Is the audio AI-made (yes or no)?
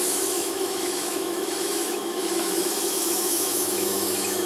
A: yes